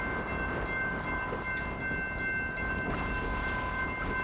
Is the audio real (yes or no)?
yes